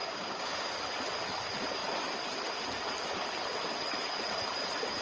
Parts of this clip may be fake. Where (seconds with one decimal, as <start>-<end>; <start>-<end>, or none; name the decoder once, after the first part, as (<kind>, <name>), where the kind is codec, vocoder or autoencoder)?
0.0-0.7 (codec, DAC)